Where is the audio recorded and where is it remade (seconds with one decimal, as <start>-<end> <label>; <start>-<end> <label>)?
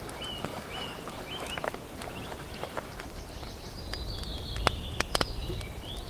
0.0-4.3 recorded; 4.3-5.5 remade; 5.5-6.1 recorded